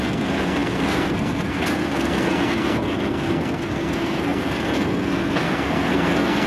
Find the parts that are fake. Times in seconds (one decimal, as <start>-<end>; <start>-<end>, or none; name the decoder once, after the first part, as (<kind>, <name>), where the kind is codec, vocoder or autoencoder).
0.0-6.5 (codec, SNAC)